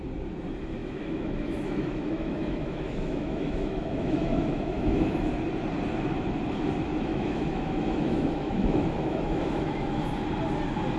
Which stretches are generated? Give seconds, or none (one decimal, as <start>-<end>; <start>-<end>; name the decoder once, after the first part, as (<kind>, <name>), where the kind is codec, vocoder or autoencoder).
0.8-5.3 (autoencoder, DAC-VAE); 7.1-10.1